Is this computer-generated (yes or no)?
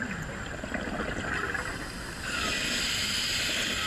no